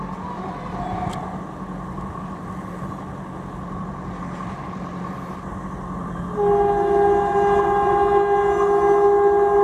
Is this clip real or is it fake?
real